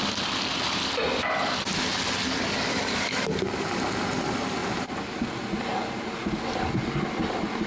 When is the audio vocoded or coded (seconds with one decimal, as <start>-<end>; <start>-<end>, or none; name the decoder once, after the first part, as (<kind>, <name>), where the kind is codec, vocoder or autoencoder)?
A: 2.7-3.3 (codec, DAC)